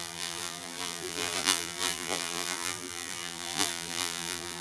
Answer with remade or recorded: remade